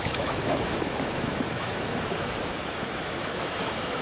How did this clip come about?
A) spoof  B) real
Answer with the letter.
A